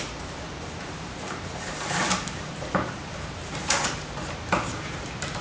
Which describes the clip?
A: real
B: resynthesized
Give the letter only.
B